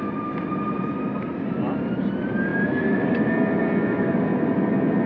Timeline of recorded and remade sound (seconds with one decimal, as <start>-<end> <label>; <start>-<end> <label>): 0.0-5.1 recorded